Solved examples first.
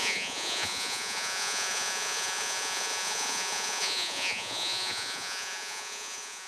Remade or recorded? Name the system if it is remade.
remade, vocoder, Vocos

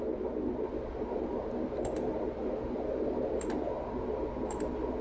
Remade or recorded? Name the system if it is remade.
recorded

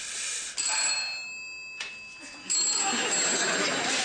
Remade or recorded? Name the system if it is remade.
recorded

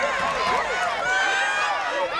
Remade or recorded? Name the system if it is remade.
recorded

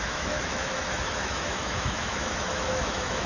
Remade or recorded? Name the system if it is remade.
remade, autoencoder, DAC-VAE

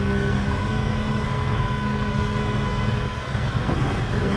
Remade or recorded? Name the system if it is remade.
remade, codec, SNAC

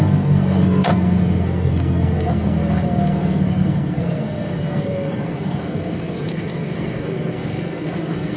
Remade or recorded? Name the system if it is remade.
remade, codec, SNAC